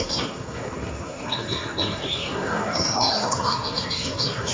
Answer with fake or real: fake